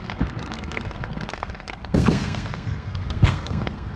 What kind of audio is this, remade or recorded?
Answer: remade